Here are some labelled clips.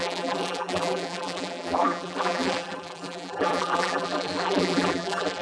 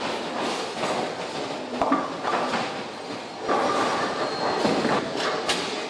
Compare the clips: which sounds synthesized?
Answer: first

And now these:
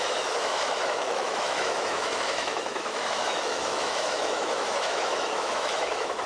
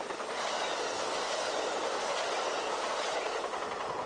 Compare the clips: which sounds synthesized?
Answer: first